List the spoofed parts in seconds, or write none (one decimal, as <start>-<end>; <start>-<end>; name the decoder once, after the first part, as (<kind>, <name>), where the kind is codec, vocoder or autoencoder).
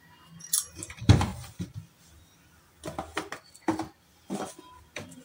none